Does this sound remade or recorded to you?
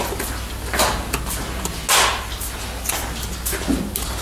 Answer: recorded